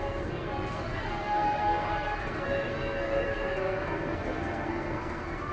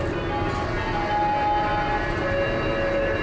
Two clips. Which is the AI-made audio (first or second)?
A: first